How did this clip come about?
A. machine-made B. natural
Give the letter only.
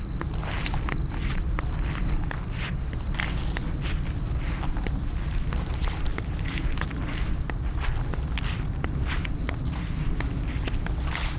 B